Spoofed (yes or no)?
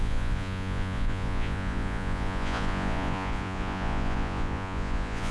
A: yes